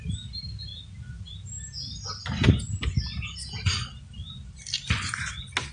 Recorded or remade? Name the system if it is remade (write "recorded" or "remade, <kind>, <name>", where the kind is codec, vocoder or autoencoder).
recorded